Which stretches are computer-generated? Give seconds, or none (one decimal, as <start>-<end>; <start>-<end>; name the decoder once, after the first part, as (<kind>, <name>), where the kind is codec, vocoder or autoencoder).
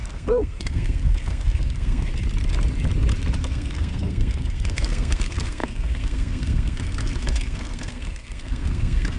0.0-2.1 (codec, SNAC); 3.4-9.2